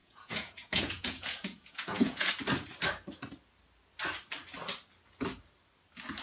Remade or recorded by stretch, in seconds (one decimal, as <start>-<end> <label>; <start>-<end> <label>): 0.0-2.3 remade; 2.3-6.2 recorded